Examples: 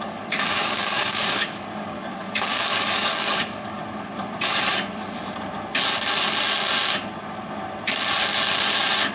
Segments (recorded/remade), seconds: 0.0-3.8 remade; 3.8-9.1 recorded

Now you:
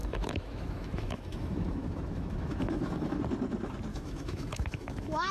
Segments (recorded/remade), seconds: 0.0-3.2 remade; 3.2-3.9 recorded; 3.9-5.3 remade

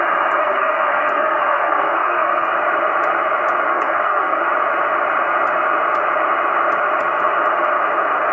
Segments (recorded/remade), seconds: 0.0-0.4 recorded; 0.4-2.5 remade; 2.5-3.7 recorded; 3.7-4.4 remade; 4.4-8.3 recorded

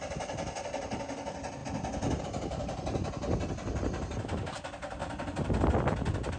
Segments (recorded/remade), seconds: 0.0-6.4 recorded